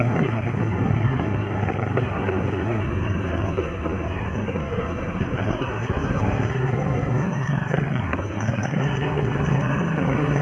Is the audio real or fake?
fake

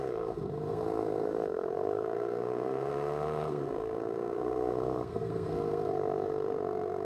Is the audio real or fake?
fake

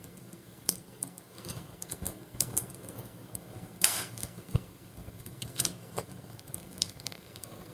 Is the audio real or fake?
fake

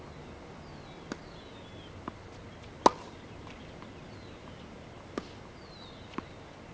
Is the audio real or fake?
real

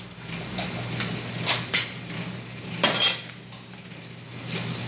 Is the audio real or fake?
real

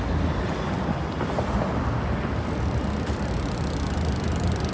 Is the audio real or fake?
real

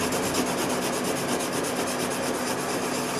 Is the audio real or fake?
real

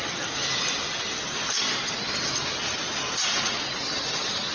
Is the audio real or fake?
real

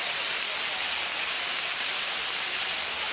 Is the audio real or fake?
real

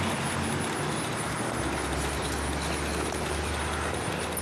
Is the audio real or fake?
real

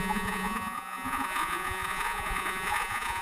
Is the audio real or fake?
fake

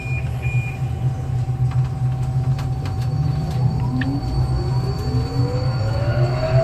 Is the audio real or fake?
real